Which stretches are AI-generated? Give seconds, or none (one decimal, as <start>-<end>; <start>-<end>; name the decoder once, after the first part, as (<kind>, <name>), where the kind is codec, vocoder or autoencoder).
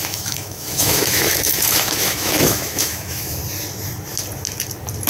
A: 0.0-3.4 (autoencoder, DAC-VAE)